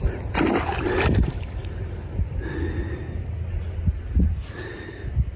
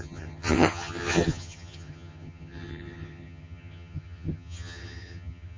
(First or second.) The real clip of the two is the first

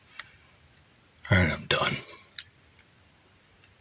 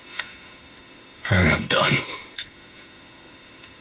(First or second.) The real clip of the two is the first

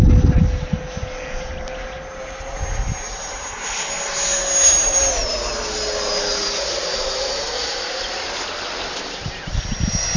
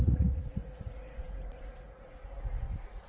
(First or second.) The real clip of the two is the first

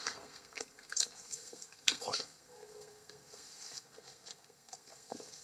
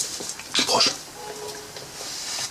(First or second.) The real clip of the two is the second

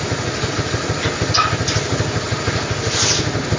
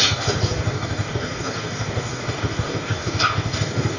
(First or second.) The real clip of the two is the first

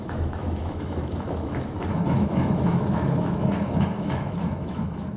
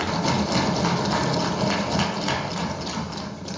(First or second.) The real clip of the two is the second